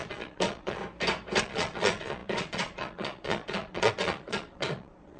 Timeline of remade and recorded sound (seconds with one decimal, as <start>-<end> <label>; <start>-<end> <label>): 0.0-0.8 remade; 0.8-1.4 recorded; 1.4-5.2 remade